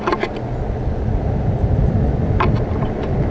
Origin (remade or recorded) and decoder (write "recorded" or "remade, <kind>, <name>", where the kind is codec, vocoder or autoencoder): recorded